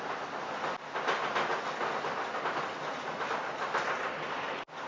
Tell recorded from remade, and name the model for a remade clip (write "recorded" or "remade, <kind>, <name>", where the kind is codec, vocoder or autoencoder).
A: recorded